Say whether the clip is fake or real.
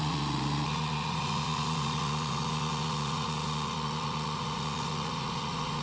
fake